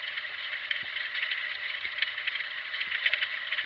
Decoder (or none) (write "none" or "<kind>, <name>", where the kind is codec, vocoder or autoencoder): vocoder, HiFi-GAN